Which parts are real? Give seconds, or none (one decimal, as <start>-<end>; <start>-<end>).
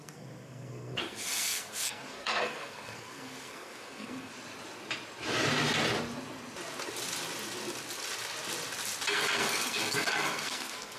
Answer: 4.3-9.1